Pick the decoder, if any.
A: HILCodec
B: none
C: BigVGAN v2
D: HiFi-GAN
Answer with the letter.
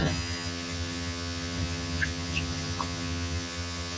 D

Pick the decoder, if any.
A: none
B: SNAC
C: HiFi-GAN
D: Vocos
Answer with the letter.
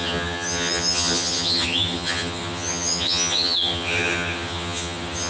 C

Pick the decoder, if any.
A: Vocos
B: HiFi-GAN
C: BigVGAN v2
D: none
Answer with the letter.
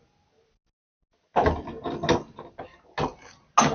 D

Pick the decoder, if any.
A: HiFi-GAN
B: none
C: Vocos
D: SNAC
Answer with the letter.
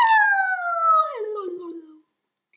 B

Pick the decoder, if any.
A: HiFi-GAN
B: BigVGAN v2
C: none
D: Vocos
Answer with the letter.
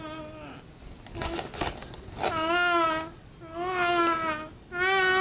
C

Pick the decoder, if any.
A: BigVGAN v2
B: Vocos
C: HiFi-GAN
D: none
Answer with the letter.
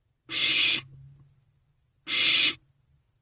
D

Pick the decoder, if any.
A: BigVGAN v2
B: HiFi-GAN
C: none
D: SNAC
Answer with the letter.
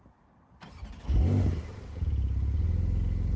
C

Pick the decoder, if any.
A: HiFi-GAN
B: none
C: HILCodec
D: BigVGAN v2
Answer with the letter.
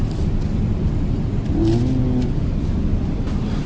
B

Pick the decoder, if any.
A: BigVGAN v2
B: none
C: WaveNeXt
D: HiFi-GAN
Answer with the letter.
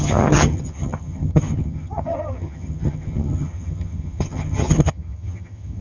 D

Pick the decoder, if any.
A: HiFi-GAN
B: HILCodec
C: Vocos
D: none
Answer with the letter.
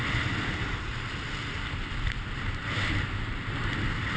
D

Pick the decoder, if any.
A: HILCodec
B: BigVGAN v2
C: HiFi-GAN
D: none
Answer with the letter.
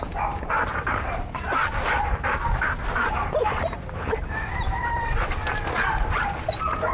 D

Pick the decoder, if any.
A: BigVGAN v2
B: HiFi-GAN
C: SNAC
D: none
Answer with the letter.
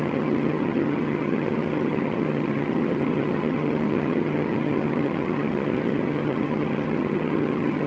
B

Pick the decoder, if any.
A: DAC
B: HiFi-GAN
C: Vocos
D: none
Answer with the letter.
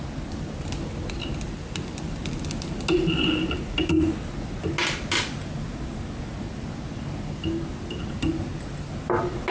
D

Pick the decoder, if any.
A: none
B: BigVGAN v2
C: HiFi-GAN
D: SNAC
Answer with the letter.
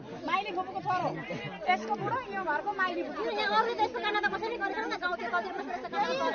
A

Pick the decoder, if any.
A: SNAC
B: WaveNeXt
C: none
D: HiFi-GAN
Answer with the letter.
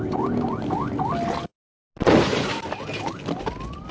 C